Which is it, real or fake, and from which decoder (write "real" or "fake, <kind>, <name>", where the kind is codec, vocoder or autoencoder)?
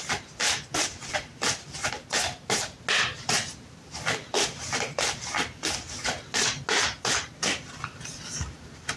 real